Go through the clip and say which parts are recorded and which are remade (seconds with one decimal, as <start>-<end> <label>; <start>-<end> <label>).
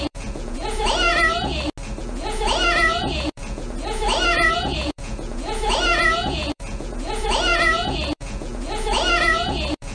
0.0-1.1 remade; 1.1-2.0 recorded; 2.0-9.9 remade